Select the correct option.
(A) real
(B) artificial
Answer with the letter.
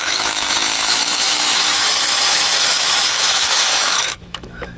B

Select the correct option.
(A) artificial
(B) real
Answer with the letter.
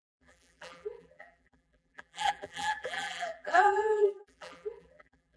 A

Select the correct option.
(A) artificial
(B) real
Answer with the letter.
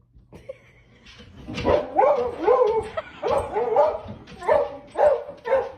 B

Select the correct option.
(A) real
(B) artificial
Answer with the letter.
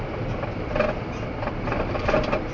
A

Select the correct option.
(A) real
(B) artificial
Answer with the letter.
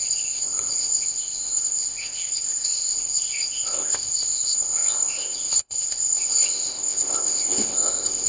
B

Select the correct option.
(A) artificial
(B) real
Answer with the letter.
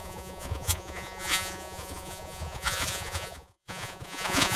A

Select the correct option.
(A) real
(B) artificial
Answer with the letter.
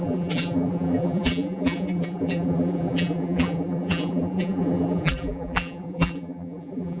B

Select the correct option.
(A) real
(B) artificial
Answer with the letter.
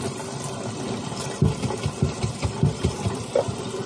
A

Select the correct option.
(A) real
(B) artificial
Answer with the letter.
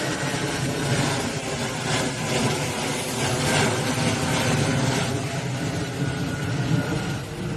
A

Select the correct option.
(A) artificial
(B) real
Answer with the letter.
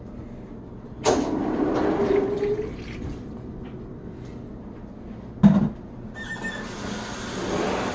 B